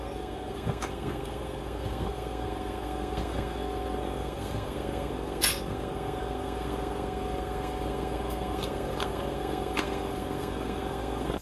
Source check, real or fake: fake